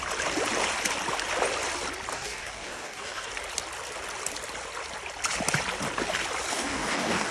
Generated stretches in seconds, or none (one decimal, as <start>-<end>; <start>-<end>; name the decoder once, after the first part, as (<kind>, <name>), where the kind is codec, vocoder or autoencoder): 2.1-3.3 (codec, DAC); 6.5-7.3